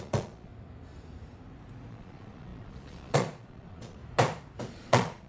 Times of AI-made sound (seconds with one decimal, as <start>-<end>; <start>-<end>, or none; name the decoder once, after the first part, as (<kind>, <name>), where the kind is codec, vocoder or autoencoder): 0.0-0.5 (vocoder, Vocos); 1.9-4.0; 4.7-5.3